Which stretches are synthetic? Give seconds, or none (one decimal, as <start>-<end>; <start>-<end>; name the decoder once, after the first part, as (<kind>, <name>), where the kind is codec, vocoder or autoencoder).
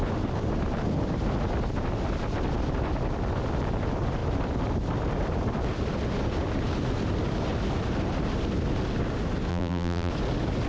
9.5-10.1 (vocoder, BigVGAN v2)